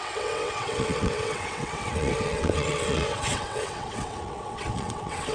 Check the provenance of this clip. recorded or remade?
remade